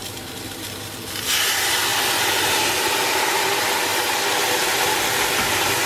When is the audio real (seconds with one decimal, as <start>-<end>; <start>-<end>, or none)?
1.2-3.9; 5.5-5.9